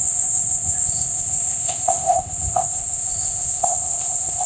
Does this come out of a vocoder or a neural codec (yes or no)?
yes